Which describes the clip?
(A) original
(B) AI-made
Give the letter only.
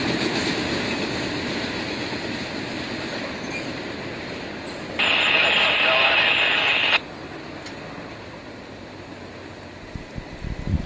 A